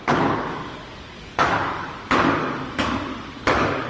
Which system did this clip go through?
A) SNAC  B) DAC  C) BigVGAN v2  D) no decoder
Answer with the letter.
B